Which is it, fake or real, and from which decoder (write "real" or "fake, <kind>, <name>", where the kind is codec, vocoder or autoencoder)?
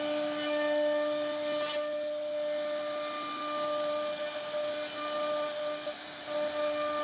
real